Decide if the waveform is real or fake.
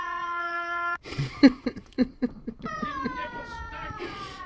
fake